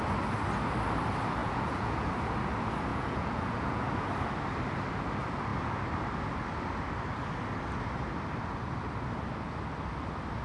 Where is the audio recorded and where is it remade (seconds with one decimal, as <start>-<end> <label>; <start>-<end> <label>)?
0.0-1.4 recorded; 1.4-2.1 remade; 2.1-2.9 recorded; 2.9-3.9 remade; 3.9-10.4 recorded